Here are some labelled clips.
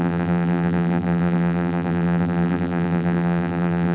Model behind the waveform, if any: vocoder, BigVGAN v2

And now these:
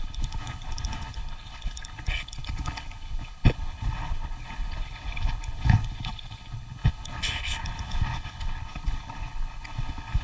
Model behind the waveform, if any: codec, HILCodec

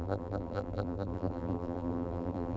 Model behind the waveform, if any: vocoder, BigVGAN v2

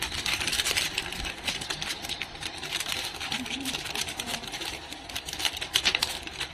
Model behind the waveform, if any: vocoder, BigVGAN v2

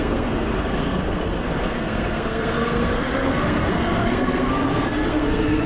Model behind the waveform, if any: codec, SNAC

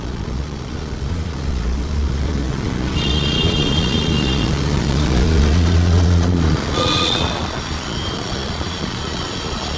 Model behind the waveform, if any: vocoder, Vocos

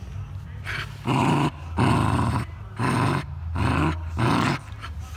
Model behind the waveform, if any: none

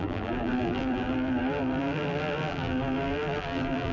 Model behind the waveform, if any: vocoder, BigVGAN v2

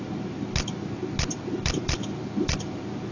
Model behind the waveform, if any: none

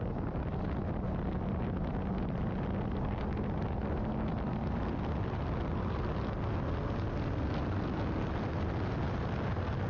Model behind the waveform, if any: none